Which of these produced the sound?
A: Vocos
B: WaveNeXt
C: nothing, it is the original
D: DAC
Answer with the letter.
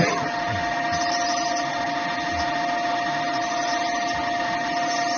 C